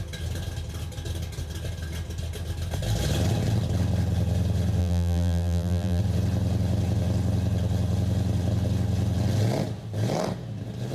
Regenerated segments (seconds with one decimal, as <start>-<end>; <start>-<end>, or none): 4.8-6.0